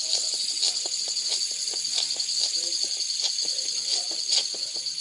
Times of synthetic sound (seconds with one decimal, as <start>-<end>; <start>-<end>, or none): none